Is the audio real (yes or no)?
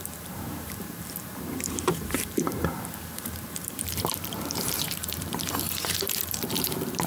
no